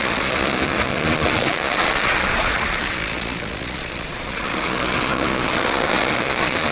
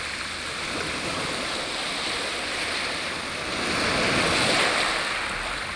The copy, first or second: first